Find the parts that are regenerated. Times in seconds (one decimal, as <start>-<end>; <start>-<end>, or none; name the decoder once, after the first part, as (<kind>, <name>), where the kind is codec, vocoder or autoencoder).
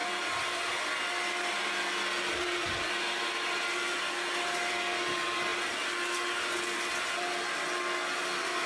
none